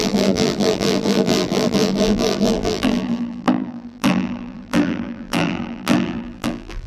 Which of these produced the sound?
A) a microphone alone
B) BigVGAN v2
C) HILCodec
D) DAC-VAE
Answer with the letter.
B